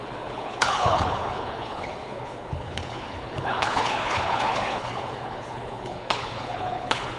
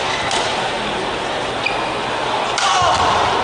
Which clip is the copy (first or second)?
first